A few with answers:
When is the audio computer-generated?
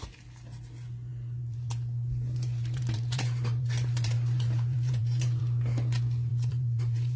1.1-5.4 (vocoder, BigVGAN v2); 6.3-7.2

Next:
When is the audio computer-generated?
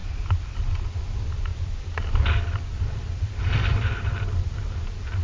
0.0-0.9 (vocoder, BigVGAN v2); 1.5-4.6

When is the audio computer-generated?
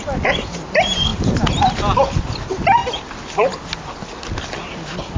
none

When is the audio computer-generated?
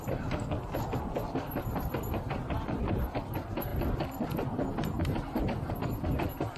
0.0-3.7 (vocoder, BigVGAN v2); 5.7-6.6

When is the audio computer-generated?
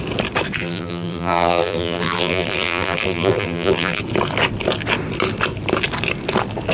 0.6-4.0 (vocoder, BigVGAN v2)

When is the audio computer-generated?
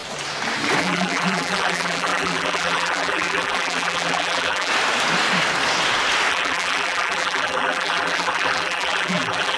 0.8-4.7 (vocoder, BigVGAN v2); 6.3-9.6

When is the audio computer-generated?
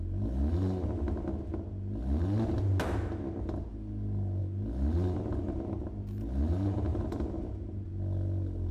6.9-7.5 (vocoder, BigVGAN v2)